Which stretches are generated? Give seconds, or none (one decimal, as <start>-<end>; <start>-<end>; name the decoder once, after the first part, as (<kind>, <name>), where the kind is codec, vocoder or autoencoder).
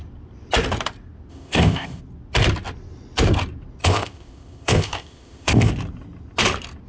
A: 1.3-2.0 (codec, ZipCodec); 3.8-5.7